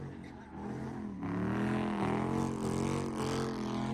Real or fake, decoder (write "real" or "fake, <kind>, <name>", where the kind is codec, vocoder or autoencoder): real